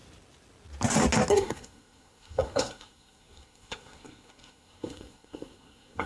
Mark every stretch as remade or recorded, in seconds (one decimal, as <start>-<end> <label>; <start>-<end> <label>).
0.0-1.3 recorded; 1.3-6.1 remade